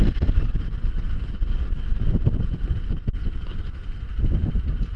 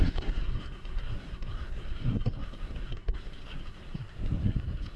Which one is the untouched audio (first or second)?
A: first